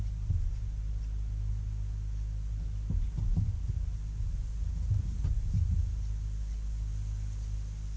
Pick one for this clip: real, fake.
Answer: real